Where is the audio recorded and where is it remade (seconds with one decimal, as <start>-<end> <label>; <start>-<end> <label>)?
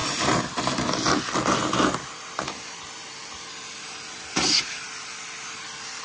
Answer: 0.0-6.0 recorded